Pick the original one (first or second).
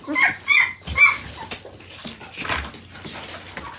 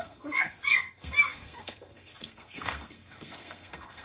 first